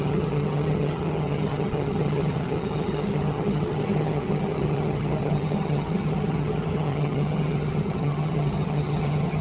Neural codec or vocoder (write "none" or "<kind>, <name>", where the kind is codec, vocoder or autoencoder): vocoder, HiFi-GAN